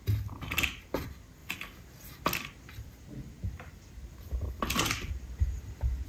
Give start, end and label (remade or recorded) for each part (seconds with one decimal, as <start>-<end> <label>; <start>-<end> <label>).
0.0-6.1 recorded